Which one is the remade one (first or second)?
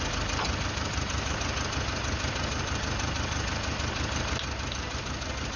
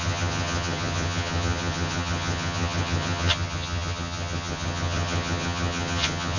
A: second